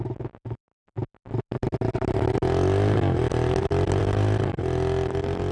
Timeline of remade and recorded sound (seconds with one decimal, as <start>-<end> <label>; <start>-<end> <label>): 0.0-5.5 recorded